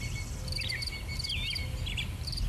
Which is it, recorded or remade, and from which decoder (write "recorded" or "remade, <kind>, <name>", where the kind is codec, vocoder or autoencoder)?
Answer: recorded